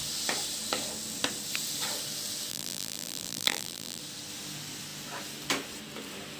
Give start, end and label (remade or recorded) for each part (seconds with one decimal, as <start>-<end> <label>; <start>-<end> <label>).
0.0-2.5 recorded; 2.5-4.0 remade; 4.0-6.4 recorded